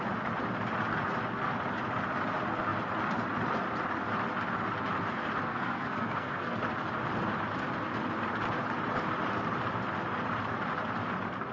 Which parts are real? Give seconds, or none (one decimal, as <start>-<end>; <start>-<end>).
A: 0.0-5.5; 6.6-11.5